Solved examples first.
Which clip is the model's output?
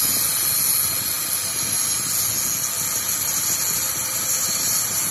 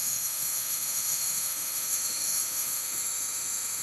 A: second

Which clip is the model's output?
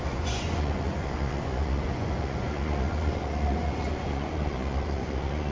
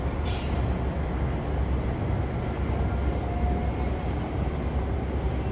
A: first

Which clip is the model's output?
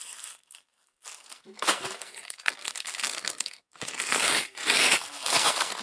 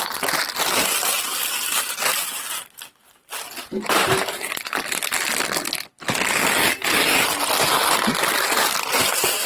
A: first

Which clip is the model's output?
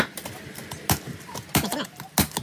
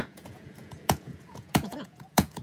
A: second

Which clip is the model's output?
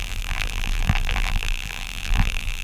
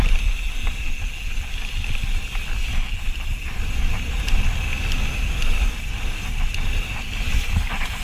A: first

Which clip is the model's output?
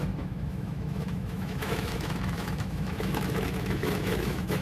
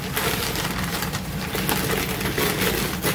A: first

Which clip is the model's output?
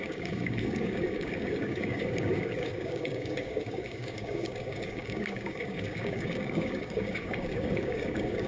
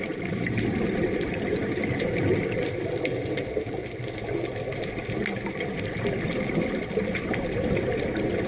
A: first